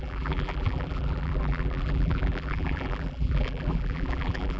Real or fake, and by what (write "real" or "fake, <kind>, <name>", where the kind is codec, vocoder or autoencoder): fake, vocoder, BigVGAN v2